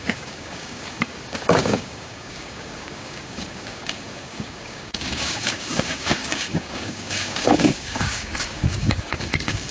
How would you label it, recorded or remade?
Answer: remade